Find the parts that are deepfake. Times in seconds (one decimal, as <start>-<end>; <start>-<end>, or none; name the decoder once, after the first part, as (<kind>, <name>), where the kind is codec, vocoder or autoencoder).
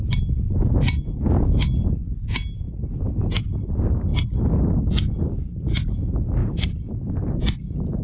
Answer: none